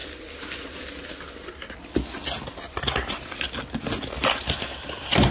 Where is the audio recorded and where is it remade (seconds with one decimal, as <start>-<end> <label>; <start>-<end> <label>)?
0.0-5.3 recorded